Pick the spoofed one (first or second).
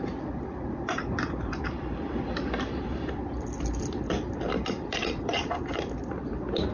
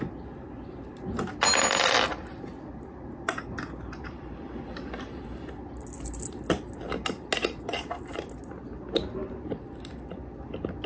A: first